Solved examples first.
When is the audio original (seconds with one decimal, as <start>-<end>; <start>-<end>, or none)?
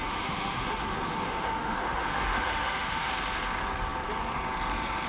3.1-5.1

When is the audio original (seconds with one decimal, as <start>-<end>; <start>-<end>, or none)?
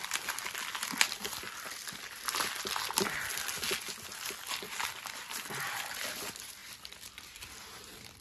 0.0-8.2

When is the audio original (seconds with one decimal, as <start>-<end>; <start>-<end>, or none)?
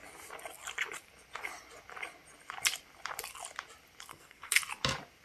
0.0-4.1; 4.6-5.2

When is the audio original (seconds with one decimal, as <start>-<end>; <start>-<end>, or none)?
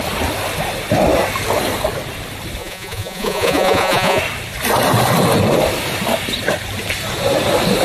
0.0-2.6; 4.2-7.8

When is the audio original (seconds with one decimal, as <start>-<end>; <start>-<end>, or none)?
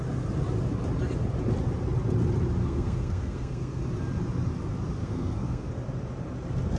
0.0-2.6; 3.8-5.0; 5.7-6.8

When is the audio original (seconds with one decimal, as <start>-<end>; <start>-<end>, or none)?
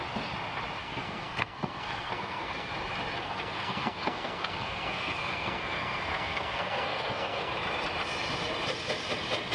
0.0-0.8; 2.7-3.2; 7.5-9.5